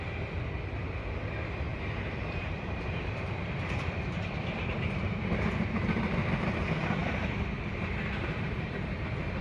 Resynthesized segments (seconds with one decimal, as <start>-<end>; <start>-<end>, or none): 1.7-6.5; 7.0-8.7